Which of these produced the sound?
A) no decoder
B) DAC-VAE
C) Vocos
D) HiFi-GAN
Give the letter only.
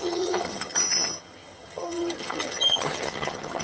D